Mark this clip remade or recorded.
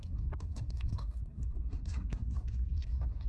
remade